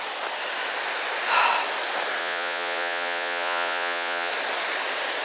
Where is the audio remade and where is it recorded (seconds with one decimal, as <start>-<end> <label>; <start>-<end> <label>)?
0.0-2.2 recorded; 2.2-4.3 remade; 4.3-5.2 recorded